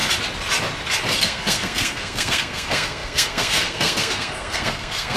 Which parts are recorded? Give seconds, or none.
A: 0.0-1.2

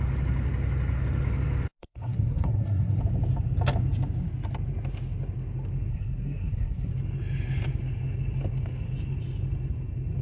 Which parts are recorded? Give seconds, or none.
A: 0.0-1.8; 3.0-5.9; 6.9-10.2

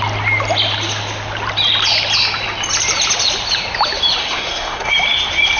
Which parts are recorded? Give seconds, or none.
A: 0.0-4.2; 4.9-5.6

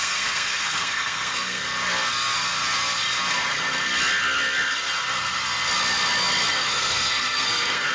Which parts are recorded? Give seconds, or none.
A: 1.6-6.5

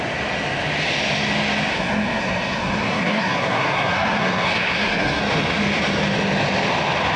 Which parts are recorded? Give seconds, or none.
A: 0.0-1.7; 5.2-7.2

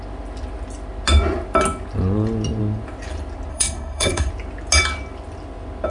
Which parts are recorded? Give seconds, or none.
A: 0.0-3.5; 4.3-5.9

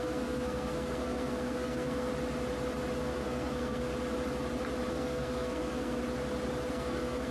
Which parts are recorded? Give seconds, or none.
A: 2.1-3.0; 3.9-4.9; 6.0-6.7

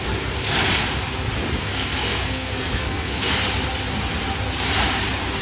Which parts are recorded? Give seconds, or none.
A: 0.0-1.6; 3.3-5.4